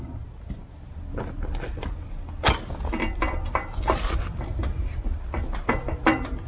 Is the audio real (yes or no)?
yes